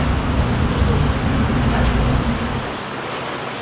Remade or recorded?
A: recorded